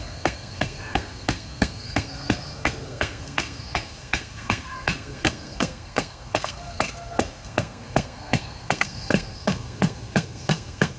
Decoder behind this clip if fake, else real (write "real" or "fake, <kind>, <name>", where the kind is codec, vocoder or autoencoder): fake, codec, SNAC